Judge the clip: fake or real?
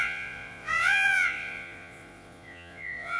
fake